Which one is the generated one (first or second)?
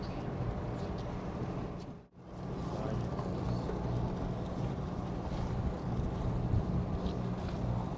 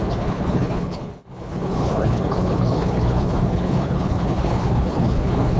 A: second